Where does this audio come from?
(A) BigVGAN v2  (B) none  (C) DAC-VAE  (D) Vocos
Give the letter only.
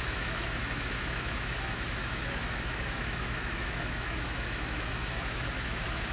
C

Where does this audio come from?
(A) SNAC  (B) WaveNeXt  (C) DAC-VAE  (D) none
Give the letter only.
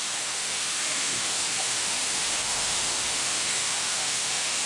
C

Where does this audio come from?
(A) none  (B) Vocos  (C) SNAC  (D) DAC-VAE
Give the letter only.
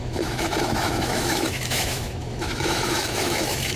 D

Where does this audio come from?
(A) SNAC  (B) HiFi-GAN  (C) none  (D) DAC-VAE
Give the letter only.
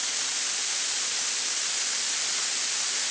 C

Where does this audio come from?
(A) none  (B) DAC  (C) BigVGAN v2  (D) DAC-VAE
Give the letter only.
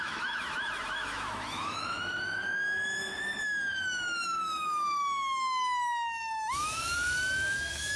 D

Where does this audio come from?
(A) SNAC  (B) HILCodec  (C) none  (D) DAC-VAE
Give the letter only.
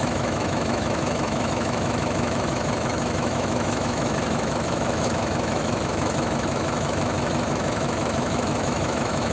D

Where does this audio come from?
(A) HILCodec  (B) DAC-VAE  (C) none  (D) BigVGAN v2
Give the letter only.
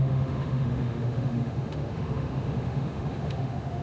B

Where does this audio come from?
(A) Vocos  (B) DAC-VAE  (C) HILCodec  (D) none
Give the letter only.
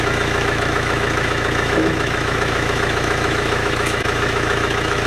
B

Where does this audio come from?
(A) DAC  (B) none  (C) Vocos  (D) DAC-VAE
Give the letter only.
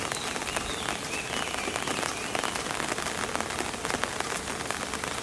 B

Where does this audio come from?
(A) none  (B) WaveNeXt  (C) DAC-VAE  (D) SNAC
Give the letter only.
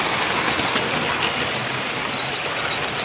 A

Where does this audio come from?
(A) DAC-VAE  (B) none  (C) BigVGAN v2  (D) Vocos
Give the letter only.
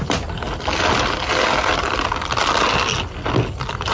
B